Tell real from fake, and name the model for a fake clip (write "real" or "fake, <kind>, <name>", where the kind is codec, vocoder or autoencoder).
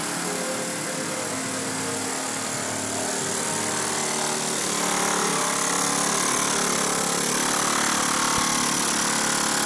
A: real